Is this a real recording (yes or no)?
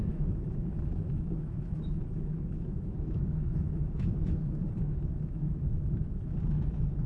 no